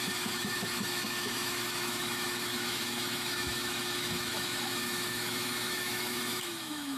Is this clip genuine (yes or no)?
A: no